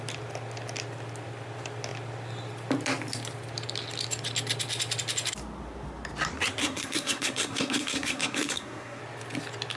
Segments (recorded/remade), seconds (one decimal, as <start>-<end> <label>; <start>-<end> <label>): 0.0-6.6 recorded; 6.6-9.0 remade; 9.0-9.8 recorded